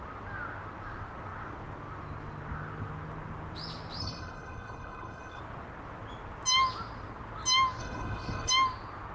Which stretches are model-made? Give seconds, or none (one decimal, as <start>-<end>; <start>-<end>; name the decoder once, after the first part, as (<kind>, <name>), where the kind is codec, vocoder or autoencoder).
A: 4.0-5.4 (codec, HILCodec); 7.8-8.5